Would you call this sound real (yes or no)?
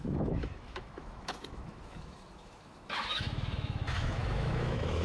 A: no